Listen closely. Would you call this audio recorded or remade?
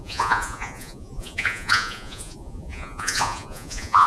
remade